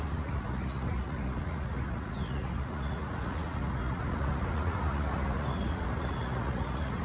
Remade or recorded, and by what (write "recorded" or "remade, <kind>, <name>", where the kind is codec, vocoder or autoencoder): remade, vocoder, Vocos